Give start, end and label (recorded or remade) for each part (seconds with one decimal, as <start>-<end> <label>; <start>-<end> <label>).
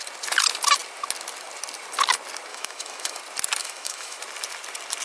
0.0-2.5 recorded; 2.5-3.2 remade; 3.2-3.6 recorded; 3.6-4.2 remade; 4.2-5.0 recorded